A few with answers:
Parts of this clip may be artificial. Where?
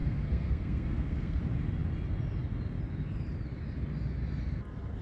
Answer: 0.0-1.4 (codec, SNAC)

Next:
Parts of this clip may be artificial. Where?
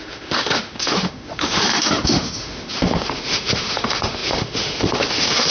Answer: 0.0-5.5 (autoencoder, DAC-VAE)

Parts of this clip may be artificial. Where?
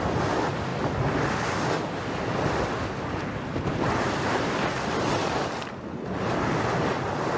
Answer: none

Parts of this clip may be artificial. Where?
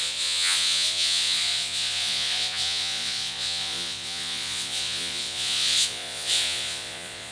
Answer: 0.0-7.3 (vocoder, Vocos)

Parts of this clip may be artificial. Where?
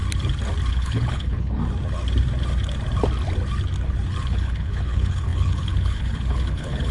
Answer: 0.7-1.6 (codec, HILCodec); 4.2-6.9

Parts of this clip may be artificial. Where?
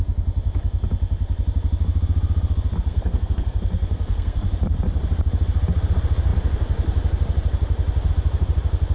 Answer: 2.9-4.5 (codec, SNAC)